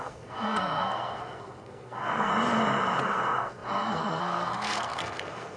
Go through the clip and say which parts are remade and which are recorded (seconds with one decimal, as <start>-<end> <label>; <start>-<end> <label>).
0.0-2.3 remade; 2.3-3.0 recorded; 3.0-5.6 remade